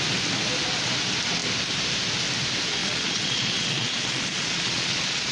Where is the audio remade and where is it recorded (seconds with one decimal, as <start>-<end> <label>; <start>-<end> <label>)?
0.0-2.8 recorded; 2.8-5.3 remade